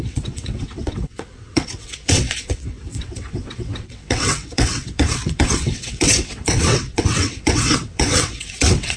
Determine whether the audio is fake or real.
fake